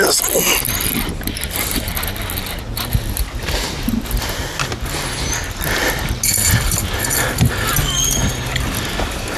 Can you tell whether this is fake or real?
real